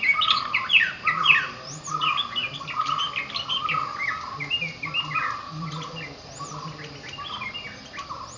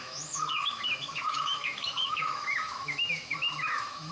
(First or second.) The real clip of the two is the first